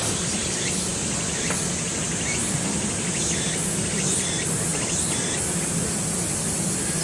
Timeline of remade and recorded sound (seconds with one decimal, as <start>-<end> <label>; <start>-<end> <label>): 0.0-7.0 recorded